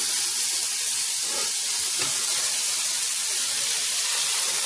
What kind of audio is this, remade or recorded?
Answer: remade